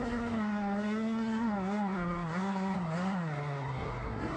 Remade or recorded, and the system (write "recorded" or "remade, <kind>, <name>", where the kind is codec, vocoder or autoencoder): remade, codec, SNAC